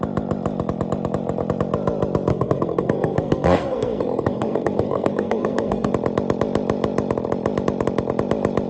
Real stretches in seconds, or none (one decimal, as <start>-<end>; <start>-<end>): 0.0-2.3; 5.9-8.7